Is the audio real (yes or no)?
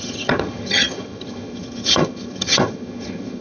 no